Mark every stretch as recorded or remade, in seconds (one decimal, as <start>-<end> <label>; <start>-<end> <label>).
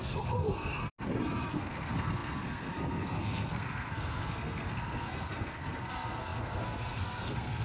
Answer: 0.0-0.8 remade; 0.8-1.5 recorded; 1.5-7.6 remade